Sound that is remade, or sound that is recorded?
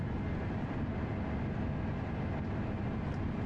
recorded